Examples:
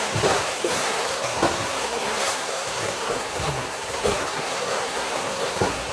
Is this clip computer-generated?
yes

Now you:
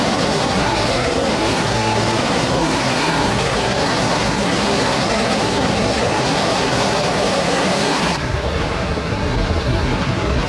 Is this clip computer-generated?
yes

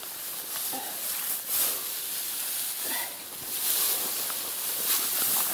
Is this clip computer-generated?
no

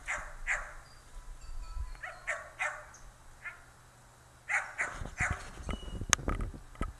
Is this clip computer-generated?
no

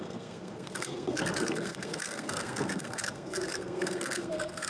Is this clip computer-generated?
yes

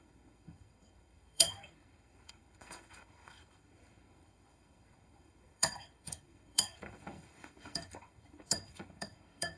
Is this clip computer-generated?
yes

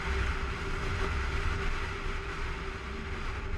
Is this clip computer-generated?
no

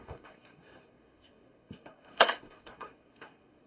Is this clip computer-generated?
yes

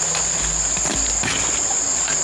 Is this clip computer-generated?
no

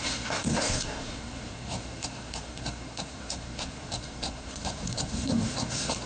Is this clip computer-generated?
yes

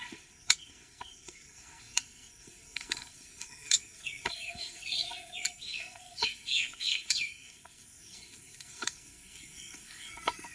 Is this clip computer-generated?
yes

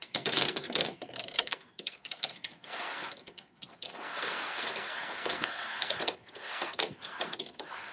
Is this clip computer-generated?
yes